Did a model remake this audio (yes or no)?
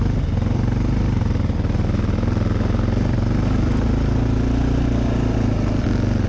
no